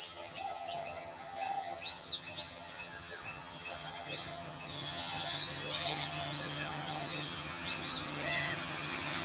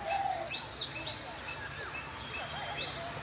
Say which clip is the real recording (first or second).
second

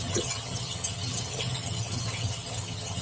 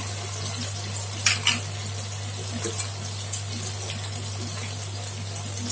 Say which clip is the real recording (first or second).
second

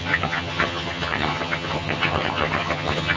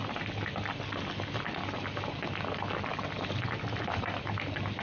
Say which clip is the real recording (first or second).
second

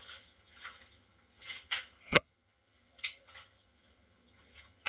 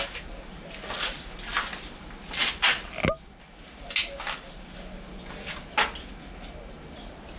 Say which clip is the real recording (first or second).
second